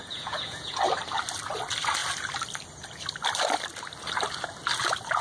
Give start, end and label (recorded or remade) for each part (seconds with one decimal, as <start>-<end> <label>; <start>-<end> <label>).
0.0-0.8 remade; 0.8-5.2 recorded